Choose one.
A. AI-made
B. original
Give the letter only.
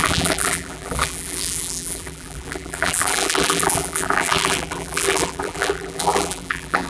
A